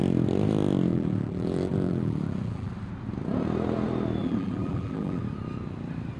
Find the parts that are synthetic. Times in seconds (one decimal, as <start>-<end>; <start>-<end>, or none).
0.9-2.7; 4.2-5.2